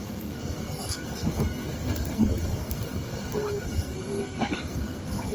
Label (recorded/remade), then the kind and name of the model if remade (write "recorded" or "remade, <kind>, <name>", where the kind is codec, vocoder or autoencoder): remade, codec, SNAC